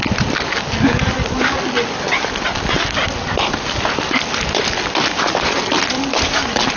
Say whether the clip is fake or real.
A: real